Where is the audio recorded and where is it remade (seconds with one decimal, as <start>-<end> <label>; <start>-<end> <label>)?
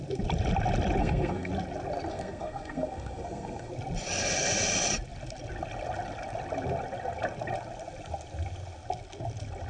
0.0-1.0 recorded; 1.0-1.5 remade; 1.5-2.1 recorded; 2.1-3.7 remade; 3.7-9.7 recorded